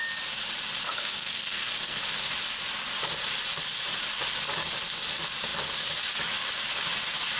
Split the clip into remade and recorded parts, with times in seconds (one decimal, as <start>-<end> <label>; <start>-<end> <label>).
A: 0.0-0.9 recorded; 0.9-2.0 remade; 2.0-7.4 recorded

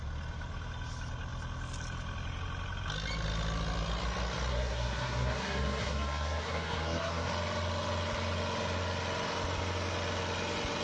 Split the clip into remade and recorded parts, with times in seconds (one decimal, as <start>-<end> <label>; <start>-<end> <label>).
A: 0.0-4.5 recorded; 4.5-7.3 remade; 7.3-10.8 recorded

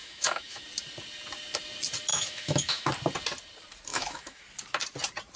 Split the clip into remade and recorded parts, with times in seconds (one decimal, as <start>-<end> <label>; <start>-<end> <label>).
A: 0.0-0.6 remade; 0.6-2.1 recorded; 2.1-2.9 remade; 2.9-3.9 recorded; 3.9-4.4 remade; 4.4-5.4 recorded

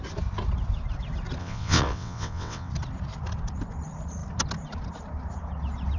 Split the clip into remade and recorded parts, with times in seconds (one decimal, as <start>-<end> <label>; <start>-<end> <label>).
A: 0.0-1.4 recorded; 1.4-2.7 remade; 2.7-6.0 recorded

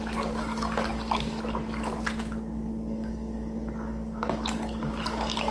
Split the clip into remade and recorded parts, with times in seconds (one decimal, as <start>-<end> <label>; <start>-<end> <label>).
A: 0.0-5.5 remade

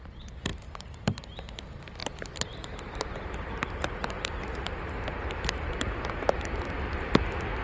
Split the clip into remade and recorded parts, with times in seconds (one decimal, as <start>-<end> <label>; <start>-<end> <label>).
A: 0.0-0.5 recorded; 0.5-1.4 remade; 1.4-2.0 recorded; 2.0-6.6 remade; 6.6-7.6 recorded